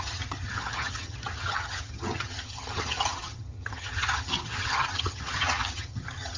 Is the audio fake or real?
fake